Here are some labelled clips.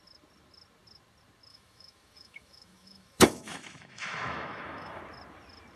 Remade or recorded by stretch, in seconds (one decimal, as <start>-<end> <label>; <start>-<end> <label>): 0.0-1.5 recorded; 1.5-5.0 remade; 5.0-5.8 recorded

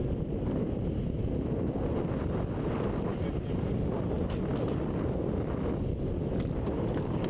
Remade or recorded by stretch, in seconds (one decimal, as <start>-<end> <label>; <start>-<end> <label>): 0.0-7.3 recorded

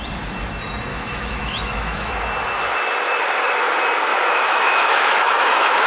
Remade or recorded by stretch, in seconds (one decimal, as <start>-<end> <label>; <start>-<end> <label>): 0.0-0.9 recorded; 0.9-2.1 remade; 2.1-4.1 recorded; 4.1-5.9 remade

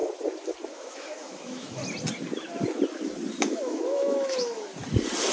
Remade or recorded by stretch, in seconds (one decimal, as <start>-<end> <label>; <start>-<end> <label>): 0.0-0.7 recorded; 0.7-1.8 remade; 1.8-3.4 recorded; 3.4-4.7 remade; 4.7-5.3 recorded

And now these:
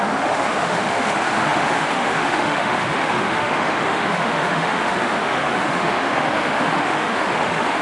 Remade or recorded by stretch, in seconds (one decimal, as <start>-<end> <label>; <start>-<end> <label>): 0.0-7.8 remade

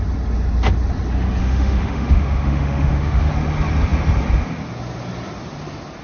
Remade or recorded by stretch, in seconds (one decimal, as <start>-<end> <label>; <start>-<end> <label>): 0.0-1.4 recorded; 1.4-3.3 remade; 3.3-6.0 recorded